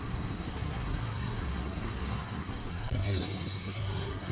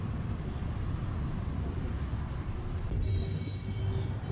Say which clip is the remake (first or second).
first